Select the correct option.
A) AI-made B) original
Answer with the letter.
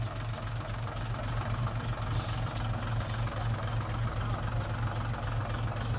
B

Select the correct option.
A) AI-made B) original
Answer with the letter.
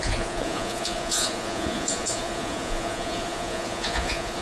A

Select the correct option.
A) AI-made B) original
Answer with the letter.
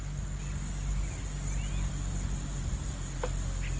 B